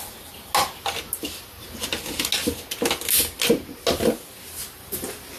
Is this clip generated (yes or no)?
no